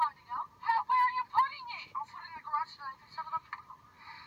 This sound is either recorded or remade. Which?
recorded